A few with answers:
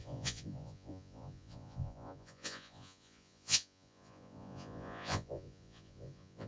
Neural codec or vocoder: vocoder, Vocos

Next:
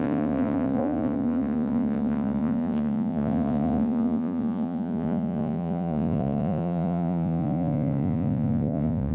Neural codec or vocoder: vocoder, Vocos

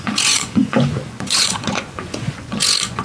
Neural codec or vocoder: vocoder, Vocos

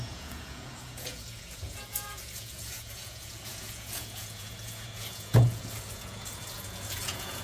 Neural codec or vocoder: vocoder, Vocos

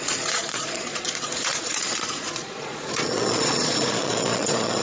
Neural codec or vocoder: vocoder, Vocos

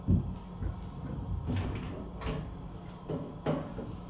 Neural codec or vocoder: none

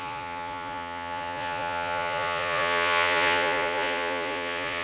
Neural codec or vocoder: vocoder, Vocos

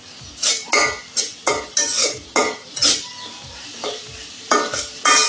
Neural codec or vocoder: none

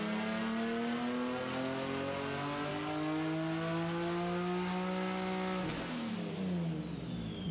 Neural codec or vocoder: none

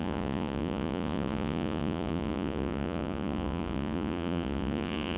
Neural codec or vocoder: vocoder, Vocos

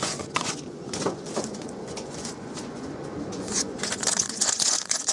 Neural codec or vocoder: vocoder, Vocos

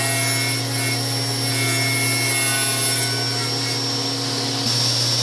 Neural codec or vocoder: none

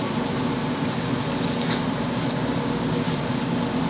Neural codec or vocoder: none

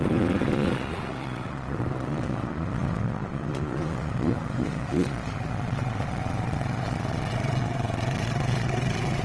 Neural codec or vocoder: vocoder, Vocos